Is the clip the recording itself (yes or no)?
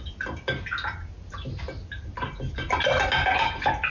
yes